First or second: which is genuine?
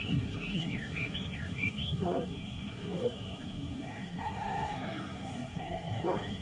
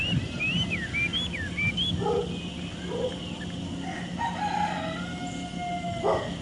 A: second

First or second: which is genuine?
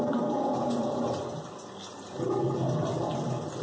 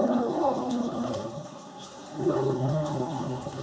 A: first